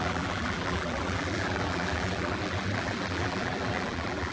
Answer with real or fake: fake